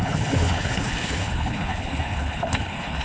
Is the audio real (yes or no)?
no